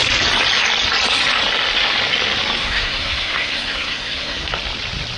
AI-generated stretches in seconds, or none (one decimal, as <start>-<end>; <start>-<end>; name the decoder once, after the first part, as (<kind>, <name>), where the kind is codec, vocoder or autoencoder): 2.6-4.5 (codec, SNAC)